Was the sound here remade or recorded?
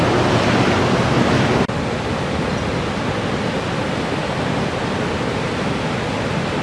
recorded